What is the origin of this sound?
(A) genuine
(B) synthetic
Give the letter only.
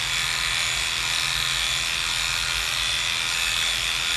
A